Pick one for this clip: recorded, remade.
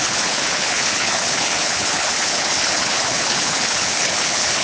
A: remade